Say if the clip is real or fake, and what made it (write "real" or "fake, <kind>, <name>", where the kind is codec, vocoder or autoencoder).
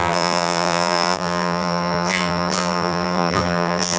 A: fake, vocoder, BigVGAN v2